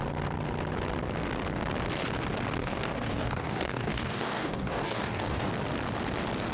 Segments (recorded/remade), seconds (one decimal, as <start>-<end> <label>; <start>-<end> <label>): 0.0-2.6 recorded; 2.6-5.5 remade; 5.5-6.5 recorded